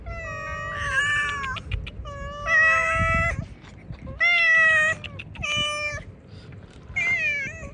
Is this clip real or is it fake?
real